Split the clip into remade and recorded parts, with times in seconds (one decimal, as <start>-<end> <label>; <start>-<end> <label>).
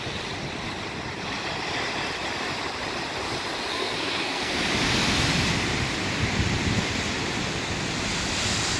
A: 0.0-3.7 recorded; 3.7-4.6 remade; 4.6-8.8 recorded